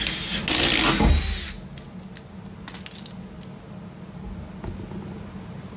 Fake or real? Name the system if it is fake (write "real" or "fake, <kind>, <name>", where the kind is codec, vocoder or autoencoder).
real